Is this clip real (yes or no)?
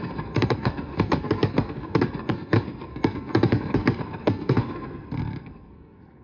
no